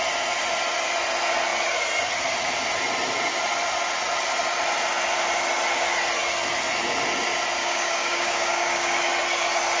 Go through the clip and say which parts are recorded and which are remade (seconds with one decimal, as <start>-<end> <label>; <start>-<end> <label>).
0.0-7.6 recorded; 7.6-9.0 remade; 9.0-9.8 recorded